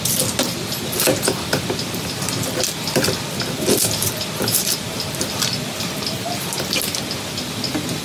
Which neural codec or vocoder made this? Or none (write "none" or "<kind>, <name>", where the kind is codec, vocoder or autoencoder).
none